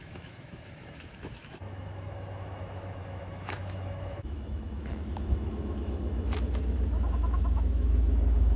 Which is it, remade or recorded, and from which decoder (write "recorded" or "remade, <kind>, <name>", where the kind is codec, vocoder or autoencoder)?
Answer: remade, autoencoder, DAC-VAE